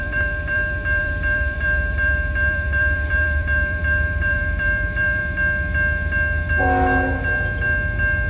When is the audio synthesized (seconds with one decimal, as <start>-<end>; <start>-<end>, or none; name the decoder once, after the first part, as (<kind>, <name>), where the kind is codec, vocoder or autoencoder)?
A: 0.0-5.2 (vocoder, BigVGAN v2)